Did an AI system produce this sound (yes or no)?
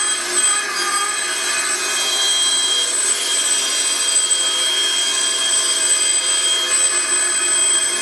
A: no